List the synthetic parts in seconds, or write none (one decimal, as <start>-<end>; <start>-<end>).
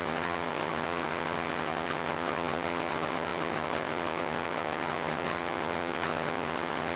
0.0-7.0